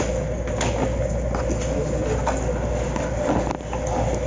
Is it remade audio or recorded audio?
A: recorded